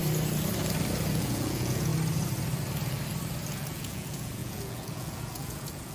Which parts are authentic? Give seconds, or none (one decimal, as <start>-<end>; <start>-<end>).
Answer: 0.0-1.1; 1.9-3.5